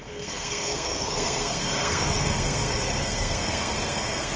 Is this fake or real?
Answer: fake